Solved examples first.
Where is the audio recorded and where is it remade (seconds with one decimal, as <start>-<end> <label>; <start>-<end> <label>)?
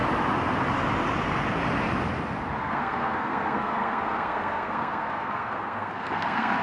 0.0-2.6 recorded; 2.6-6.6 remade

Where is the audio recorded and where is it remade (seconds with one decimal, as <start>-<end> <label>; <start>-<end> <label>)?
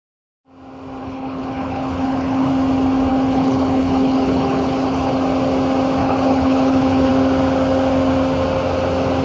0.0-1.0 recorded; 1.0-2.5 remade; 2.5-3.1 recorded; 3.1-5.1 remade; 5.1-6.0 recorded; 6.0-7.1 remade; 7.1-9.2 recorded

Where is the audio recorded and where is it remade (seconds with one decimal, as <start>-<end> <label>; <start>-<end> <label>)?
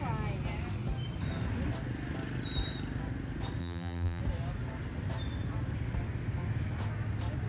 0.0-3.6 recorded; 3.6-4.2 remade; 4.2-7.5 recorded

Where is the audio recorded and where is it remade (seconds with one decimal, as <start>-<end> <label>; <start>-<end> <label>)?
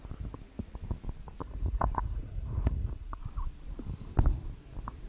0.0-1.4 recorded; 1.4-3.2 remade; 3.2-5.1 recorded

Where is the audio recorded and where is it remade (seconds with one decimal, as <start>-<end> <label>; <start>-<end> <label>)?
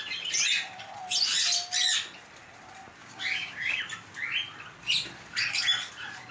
0.0-3.0 recorded; 3.0-3.8 remade; 3.8-6.3 recorded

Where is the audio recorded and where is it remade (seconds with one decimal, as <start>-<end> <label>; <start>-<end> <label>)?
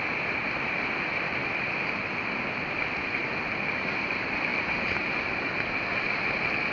0.0-6.7 recorded